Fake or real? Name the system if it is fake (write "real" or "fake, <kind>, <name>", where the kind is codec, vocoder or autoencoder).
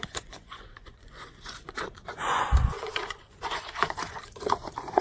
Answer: fake, vocoder, Vocos